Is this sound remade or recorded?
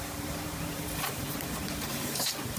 remade